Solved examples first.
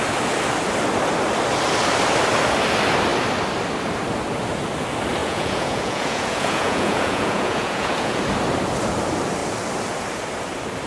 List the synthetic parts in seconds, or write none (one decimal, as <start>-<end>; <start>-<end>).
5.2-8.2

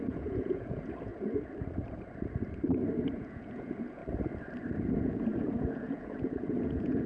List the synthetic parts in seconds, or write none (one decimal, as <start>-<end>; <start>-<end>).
0.0-1.1; 3.1-4.0; 4.8-7.1

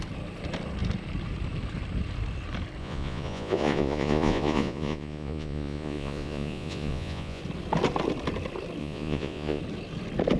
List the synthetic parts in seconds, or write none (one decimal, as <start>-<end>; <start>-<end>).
2.8-7.4; 8.8-9.6

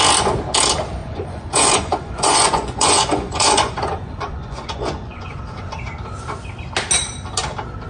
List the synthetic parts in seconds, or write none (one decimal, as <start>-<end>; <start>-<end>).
1.0-5.4

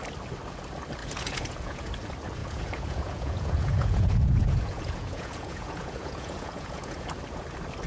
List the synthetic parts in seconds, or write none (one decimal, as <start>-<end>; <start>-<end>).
1.0-1.9; 2.4-7.1

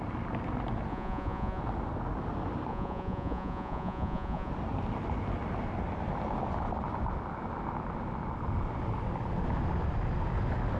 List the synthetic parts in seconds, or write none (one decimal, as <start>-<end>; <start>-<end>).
0.9-1.6; 2.7-4.5

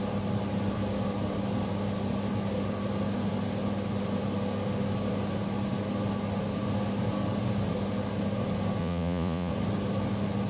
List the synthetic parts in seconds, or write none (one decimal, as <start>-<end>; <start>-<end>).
8.8-9.5